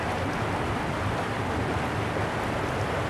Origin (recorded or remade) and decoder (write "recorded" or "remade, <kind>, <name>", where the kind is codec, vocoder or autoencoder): recorded